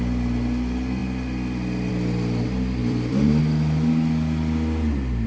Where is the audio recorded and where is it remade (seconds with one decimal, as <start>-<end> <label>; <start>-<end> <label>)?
0.0-2.8 recorded; 2.8-3.4 remade; 3.4-5.3 recorded